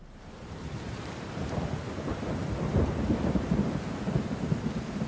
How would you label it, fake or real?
real